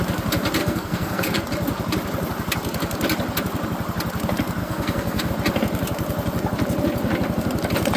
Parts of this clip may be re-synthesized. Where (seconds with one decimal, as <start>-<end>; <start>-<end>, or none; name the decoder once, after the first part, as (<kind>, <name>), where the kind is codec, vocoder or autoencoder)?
0.6-1.4 (codec, SNAC); 4.6-5.3